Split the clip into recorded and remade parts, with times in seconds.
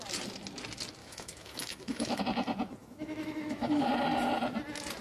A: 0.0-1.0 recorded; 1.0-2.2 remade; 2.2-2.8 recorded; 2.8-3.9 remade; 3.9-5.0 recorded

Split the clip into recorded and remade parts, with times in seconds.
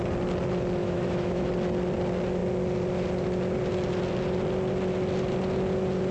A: 0.0-0.8 recorded; 0.8-1.5 remade; 1.5-6.1 recorded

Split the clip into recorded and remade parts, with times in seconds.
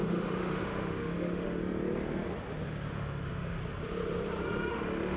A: 0.0-1.6 remade; 1.6-2.9 recorded; 2.9-3.6 remade; 3.6-4.7 recorded; 4.7-5.2 remade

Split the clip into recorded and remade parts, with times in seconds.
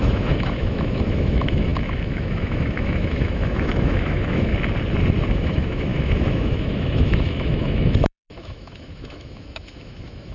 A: 0.0-4.5 remade; 4.5-5.3 recorded; 5.3-10.3 remade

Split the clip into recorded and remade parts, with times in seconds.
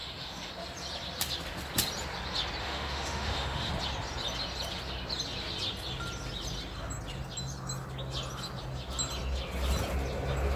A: 0.0-0.5 remade; 0.5-2.6 recorded; 2.6-3.7 remade; 3.7-10.6 recorded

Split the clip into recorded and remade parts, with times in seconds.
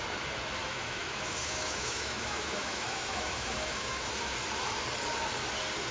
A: 0.0-0.6 recorded; 0.6-4.1 remade; 4.1-5.9 recorded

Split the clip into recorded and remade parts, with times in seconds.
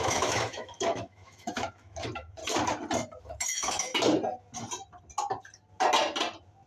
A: 0.0-2.4 remade; 2.4-3.2 recorded; 3.2-3.9 remade; 3.9-6.7 recorded